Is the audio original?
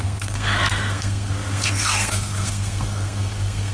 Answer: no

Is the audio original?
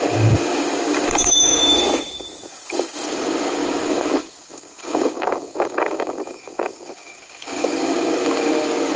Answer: no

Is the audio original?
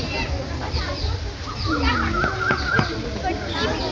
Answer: yes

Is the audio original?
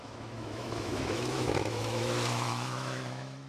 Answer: no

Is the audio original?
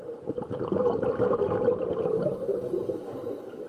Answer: yes